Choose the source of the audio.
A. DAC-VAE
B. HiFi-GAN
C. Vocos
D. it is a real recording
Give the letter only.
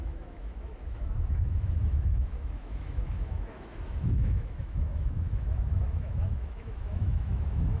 A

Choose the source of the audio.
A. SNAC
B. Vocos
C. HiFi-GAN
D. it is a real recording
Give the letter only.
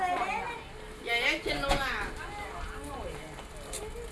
D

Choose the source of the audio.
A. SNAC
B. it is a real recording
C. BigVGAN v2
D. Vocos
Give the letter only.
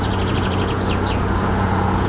D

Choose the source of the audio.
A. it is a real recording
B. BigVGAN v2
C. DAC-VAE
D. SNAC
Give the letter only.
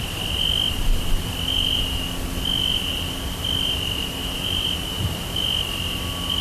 A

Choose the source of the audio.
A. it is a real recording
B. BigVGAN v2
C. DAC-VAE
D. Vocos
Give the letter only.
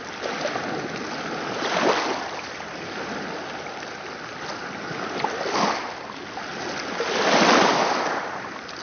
A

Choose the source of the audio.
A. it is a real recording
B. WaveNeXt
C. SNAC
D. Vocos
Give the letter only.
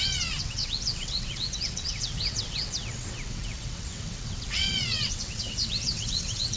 B